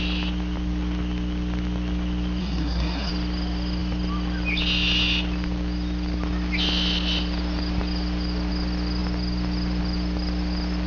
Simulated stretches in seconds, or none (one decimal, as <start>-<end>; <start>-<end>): 2.4-3.1